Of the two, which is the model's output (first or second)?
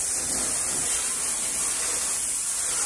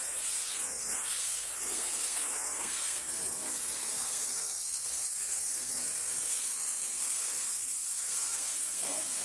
second